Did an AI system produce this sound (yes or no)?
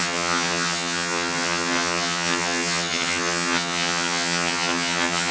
yes